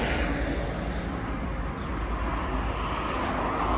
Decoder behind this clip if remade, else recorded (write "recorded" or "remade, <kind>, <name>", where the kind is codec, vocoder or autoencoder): recorded